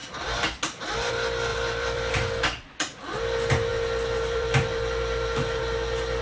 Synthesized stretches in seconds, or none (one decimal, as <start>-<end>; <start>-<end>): 0.0-1.1; 1.5-2.1; 3.7-5.6